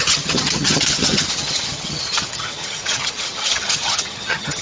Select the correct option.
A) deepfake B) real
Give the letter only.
A